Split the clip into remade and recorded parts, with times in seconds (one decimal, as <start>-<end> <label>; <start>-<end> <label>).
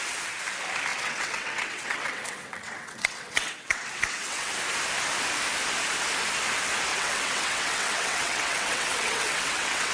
0.0-0.9 recorded; 0.9-4.5 remade; 4.5-6.9 recorded; 6.9-9.9 remade